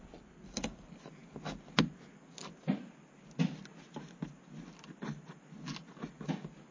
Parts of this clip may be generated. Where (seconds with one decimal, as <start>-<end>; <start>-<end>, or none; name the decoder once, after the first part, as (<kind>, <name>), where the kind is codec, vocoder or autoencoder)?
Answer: none